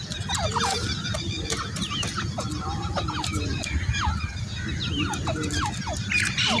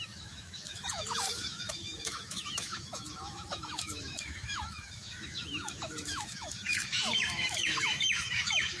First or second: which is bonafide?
first